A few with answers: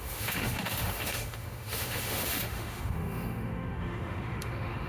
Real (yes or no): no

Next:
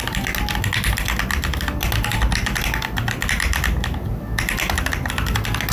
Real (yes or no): yes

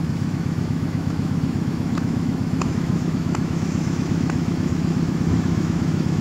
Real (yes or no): no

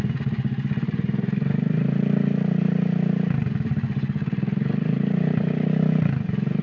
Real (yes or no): yes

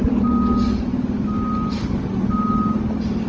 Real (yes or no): yes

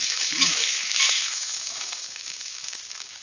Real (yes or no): no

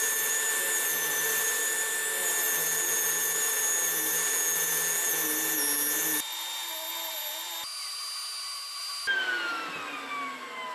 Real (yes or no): yes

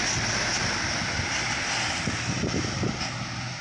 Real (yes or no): yes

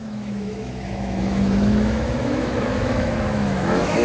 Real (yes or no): no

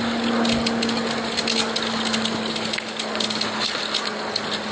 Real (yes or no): yes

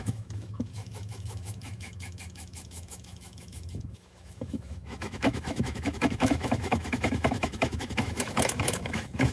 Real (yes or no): no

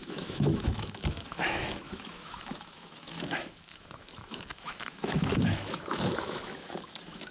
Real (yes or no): no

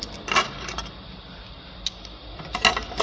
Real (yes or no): yes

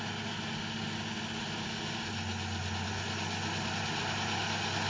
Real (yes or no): yes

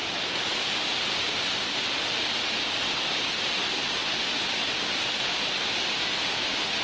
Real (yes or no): yes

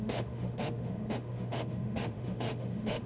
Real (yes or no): no